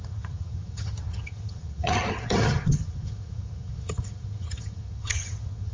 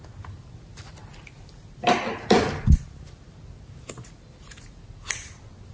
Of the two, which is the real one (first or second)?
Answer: second